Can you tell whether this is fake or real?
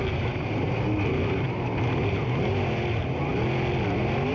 real